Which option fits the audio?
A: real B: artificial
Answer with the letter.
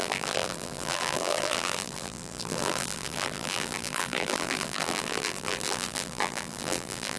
B